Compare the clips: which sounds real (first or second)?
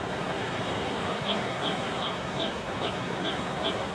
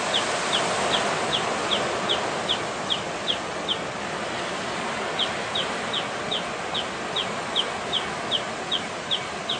second